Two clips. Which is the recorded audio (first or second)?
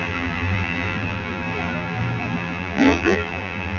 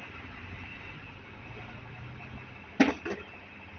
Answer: second